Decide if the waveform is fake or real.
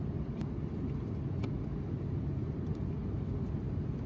real